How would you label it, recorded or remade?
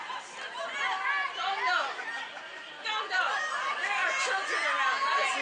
recorded